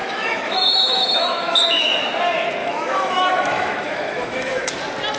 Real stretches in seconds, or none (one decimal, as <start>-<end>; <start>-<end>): 2.0-2.6; 4.7-5.2